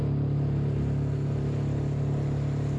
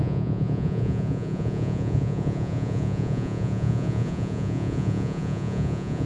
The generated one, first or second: second